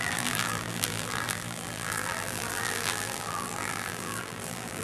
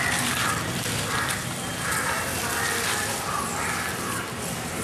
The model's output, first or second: first